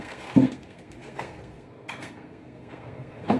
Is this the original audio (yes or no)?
no